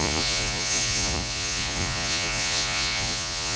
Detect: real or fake fake